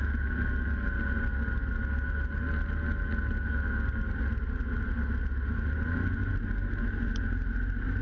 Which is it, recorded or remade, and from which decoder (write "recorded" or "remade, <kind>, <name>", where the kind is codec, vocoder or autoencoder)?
recorded